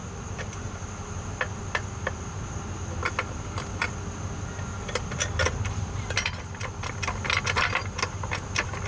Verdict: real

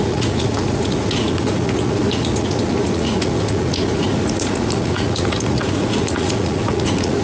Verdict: fake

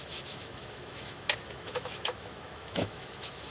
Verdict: fake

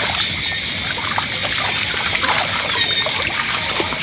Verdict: real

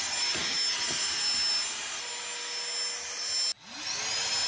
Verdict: real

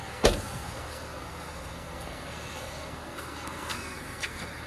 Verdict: fake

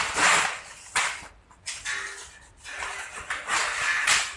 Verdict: real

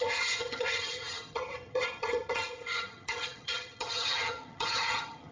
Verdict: fake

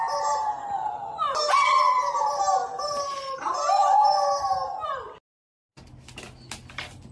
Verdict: real